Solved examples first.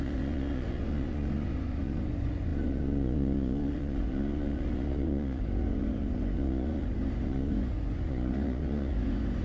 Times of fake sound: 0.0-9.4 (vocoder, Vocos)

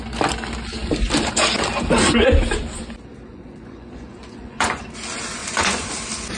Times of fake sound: 3.3-4.8 (vocoder, Vocos); 5.4-5.9

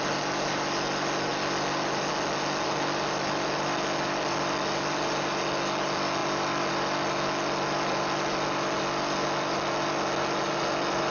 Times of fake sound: none

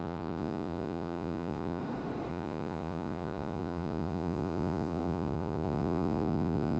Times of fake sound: 0.0-1.8 (vocoder, Vocos); 2.3-6.8

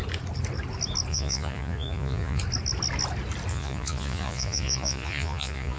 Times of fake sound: 1.1-2.4 (vocoder, Vocos); 3.5-5.8

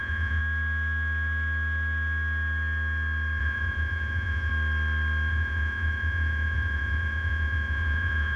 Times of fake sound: 0.0-0.4 (vocoder, Vocos); 3.4-4.5; 5.3-8.4

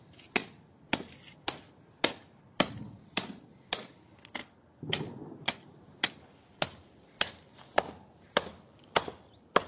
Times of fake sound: none

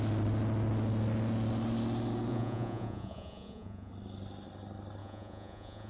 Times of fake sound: 2.3-3.9 (vocoder, Vocos); 5.0-5.9